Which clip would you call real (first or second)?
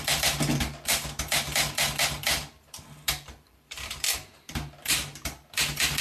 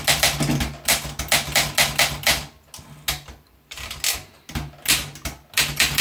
second